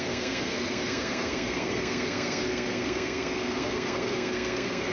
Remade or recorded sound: remade